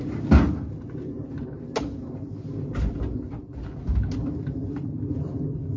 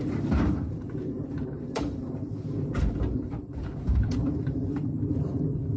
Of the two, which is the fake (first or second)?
second